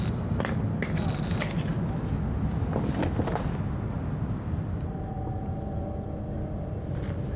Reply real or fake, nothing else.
real